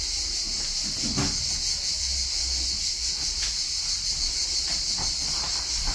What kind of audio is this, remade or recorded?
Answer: recorded